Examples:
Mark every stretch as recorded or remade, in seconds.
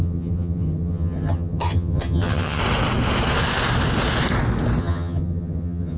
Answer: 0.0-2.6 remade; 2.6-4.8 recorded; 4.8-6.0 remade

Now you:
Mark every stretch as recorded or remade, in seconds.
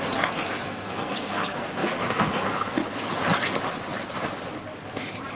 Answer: 0.0-2.8 remade; 2.8-5.3 recorded